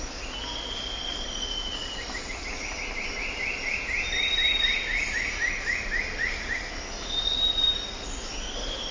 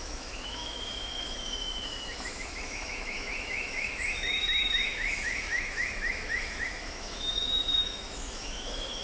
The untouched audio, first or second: first